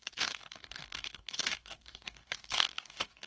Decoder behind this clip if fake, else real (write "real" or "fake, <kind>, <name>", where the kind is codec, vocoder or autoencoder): fake, codec, DAC